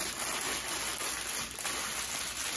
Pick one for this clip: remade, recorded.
recorded